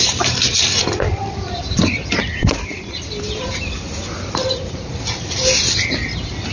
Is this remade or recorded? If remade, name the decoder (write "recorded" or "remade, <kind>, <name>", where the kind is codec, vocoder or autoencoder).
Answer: recorded